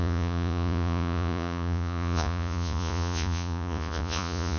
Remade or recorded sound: remade